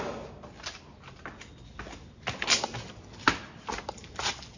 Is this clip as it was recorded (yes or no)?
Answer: yes